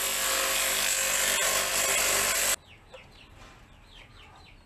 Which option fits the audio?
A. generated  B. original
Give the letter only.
B